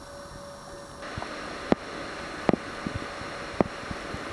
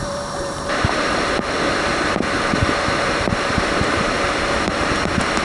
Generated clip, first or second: second